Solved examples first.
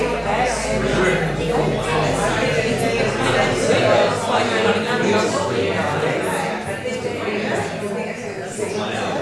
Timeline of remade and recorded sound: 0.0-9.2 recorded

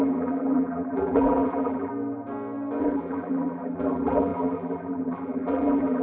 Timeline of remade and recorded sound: 0.0-1.9 remade; 1.9-2.8 recorded; 2.8-6.0 remade

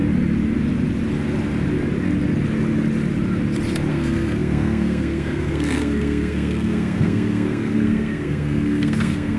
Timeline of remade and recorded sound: 0.0-3.9 recorded; 3.9-9.4 remade

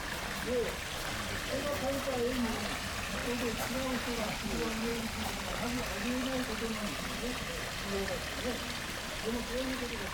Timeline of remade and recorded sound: 0.0-10.1 recorded